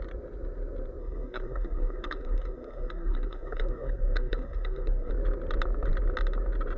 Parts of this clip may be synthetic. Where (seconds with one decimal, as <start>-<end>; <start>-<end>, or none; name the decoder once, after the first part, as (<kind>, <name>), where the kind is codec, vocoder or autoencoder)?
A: 1.0-5.1 (codec, SNAC)